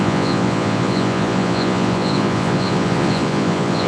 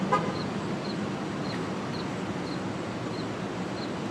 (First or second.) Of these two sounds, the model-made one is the first